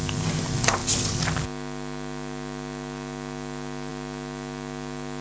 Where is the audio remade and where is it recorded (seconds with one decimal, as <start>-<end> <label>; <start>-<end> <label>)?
0.0-5.2 recorded